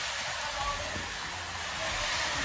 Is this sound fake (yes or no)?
no